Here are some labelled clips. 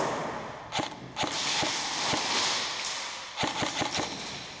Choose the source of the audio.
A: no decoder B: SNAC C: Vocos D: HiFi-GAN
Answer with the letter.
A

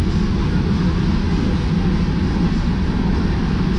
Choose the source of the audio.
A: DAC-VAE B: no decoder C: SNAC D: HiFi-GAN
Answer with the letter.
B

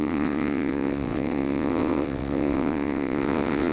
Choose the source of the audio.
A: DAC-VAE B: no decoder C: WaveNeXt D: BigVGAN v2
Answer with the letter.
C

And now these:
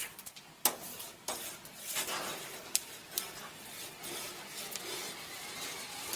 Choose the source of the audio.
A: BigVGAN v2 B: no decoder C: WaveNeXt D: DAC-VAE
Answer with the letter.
B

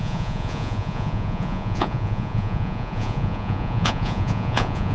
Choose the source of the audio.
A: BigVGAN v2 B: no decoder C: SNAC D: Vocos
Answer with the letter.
D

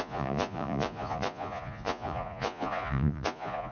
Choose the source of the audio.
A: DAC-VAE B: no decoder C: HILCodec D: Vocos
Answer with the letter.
D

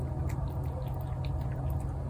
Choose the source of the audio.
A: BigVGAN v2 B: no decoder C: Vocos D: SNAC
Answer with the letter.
B